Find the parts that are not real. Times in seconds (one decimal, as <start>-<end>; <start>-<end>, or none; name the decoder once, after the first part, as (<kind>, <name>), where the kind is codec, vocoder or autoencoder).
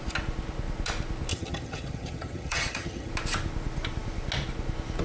1.3-3.1 (vocoder, HiFi-GAN)